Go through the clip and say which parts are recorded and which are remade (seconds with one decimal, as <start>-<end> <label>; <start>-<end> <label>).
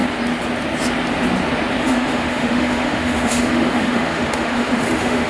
0.0-1.8 recorded; 1.8-5.3 remade